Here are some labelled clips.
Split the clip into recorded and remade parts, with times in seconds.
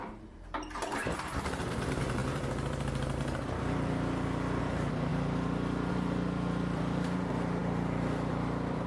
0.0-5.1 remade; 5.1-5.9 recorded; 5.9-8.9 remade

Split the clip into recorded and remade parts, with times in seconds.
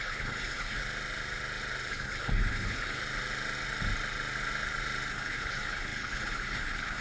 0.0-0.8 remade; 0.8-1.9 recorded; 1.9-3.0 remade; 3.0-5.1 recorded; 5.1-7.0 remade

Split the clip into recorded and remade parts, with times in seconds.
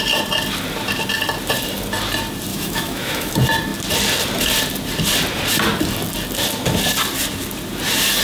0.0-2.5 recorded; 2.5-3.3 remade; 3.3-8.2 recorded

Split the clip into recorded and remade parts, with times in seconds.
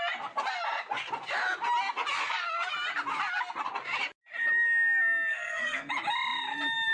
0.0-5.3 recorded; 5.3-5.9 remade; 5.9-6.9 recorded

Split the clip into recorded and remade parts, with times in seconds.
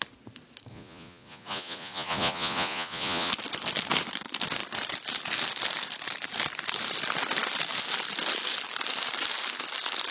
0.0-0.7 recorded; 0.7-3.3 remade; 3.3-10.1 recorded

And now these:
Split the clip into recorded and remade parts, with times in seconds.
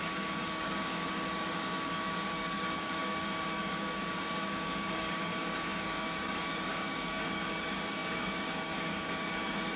0.0-9.8 remade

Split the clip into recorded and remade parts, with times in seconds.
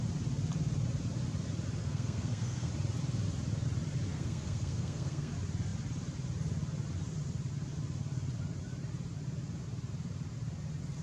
0.0-1.8 recorded; 1.8-2.7 remade; 2.7-4.1 recorded; 4.1-5.3 remade; 5.3-11.0 recorded